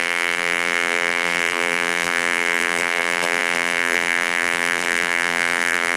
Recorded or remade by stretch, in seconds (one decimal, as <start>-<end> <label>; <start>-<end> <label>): 0.0-6.0 remade